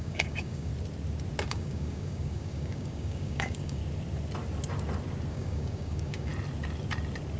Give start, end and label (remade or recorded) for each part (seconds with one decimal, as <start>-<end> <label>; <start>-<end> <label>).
0.0-0.7 remade; 0.7-1.5 recorded; 1.5-3.8 remade; 3.8-5.3 recorded; 5.3-6.3 remade; 6.3-7.4 recorded